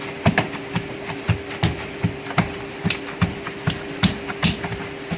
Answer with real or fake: real